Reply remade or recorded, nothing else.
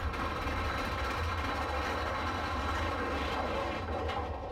recorded